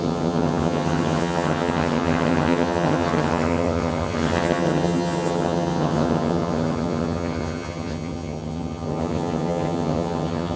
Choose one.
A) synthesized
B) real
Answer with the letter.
A